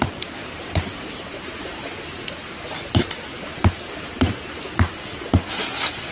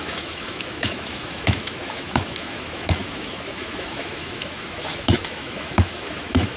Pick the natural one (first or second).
first